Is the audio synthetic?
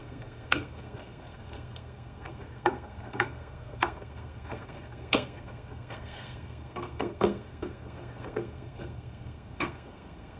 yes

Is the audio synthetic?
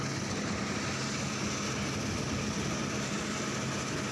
no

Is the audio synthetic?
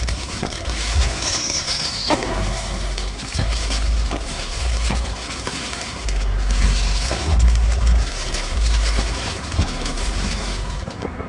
yes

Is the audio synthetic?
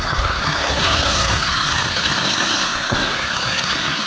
yes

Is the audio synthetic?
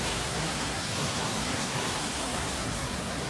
yes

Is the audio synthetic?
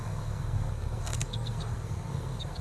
yes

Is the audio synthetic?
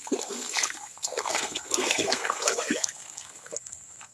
yes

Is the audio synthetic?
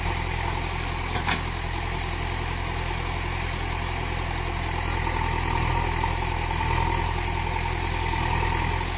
no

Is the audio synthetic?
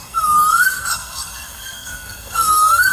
yes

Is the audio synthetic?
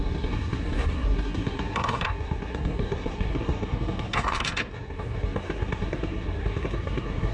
yes